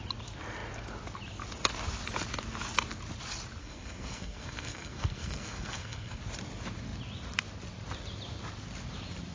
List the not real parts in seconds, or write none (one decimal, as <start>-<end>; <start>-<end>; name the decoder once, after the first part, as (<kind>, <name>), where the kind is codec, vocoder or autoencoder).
3.6-6.2 (codec, SNAC)